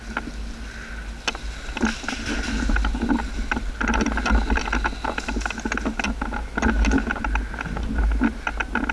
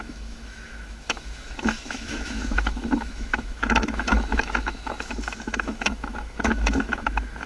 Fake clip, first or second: second